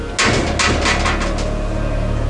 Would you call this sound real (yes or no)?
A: yes